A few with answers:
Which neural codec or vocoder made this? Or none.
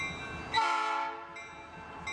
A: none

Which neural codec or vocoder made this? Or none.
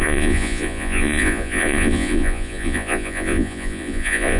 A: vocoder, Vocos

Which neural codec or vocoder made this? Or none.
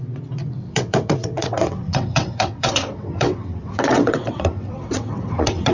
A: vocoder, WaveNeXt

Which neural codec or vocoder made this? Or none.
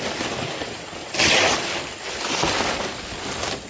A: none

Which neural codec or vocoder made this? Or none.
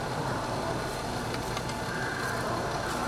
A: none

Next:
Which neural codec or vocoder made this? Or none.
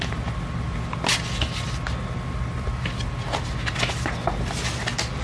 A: none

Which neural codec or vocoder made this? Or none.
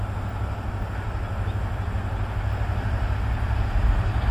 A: none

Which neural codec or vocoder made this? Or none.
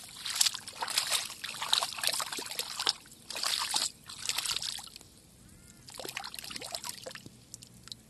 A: none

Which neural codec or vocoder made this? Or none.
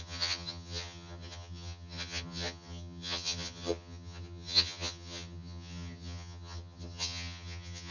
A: vocoder, HiFi-GAN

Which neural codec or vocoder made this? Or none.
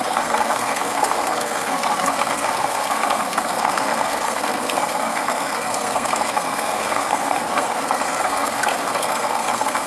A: codec, SNAC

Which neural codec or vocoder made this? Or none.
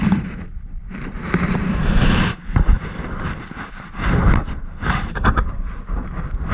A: vocoder, BigVGAN v2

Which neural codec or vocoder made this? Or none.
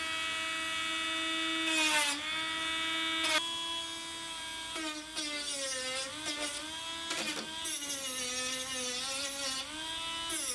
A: none